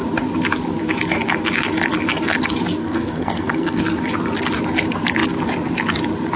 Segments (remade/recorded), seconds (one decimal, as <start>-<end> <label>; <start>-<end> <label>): 0.0-2.8 recorded; 2.8-3.8 remade; 3.8-6.4 recorded